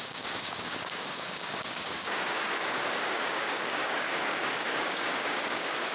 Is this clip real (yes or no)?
no